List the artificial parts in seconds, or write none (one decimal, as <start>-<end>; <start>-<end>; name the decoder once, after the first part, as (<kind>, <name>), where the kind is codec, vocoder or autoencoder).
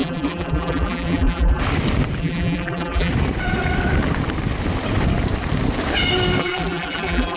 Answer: 0.0-1.6 (vocoder, BigVGAN v2); 2.2-3.1; 6.4-7.4